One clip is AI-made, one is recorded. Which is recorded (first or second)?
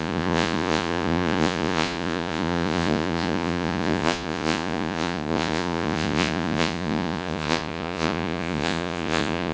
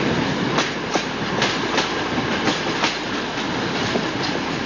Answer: second